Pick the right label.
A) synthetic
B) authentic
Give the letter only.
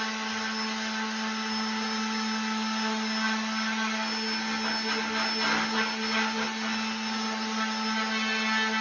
B